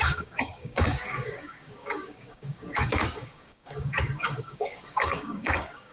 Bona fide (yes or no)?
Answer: no